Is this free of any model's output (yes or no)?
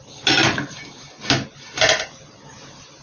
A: yes